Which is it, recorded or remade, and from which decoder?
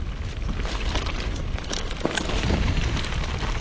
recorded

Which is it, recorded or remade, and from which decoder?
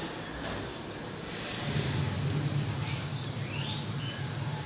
recorded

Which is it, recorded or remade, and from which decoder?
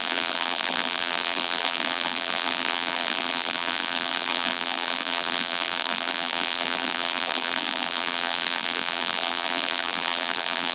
remade, vocoder, BigVGAN v2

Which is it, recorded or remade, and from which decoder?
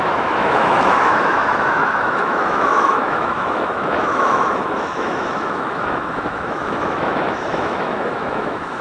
remade, autoencoder, DAC-VAE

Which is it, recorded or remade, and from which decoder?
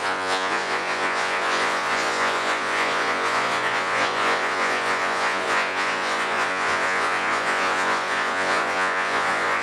remade, vocoder, Vocos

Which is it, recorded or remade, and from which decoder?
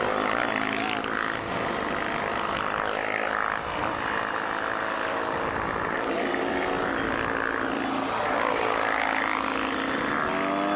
recorded